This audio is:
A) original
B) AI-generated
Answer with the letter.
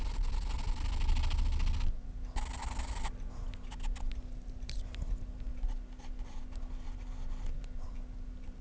A